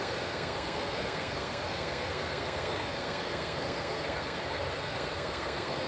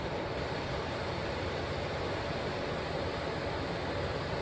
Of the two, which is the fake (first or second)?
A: first